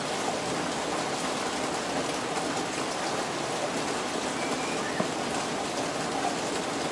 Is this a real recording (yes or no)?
yes